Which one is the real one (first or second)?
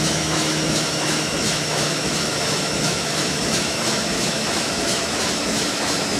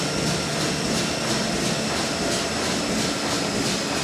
second